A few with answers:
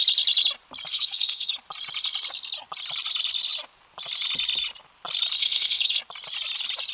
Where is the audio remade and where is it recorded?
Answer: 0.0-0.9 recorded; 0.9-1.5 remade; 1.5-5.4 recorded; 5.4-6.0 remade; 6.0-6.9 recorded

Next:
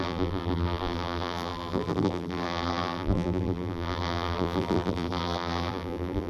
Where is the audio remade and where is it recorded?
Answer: 0.0-6.3 remade

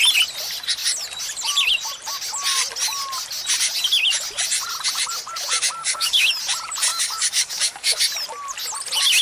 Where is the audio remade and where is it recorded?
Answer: 0.0-5.8 recorded; 5.8-6.3 remade; 6.3-6.9 recorded; 6.9-8.0 remade; 8.0-9.2 recorded